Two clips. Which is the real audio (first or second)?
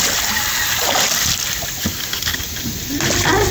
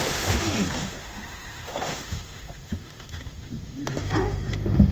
first